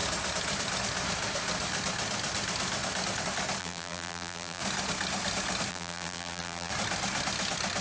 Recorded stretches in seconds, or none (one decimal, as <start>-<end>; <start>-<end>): 0.0-3.6; 4.6-5.7; 6.7-7.8